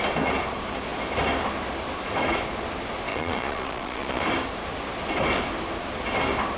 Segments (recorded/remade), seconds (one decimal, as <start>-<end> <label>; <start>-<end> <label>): 0.0-3.1 recorded; 3.1-4.2 remade; 4.2-6.6 recorded